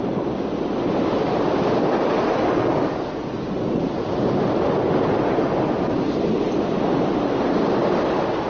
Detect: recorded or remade recorded